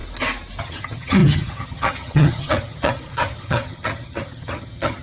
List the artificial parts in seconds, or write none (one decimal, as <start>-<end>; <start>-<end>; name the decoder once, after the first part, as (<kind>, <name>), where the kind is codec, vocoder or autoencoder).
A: 0.6-5.0 (vocoder, HiFi-GAN)